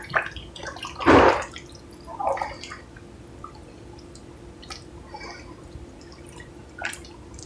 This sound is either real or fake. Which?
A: fake